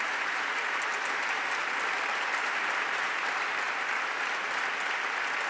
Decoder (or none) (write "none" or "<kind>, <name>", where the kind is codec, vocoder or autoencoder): none